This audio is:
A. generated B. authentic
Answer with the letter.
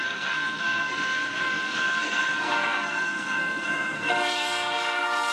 A